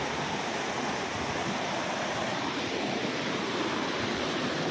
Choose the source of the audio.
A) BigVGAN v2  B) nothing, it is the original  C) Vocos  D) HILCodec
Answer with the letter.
A